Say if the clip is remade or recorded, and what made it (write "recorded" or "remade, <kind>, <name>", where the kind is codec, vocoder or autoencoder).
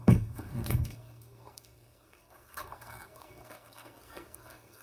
remade, codec, SNAC